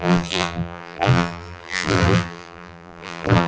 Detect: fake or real fake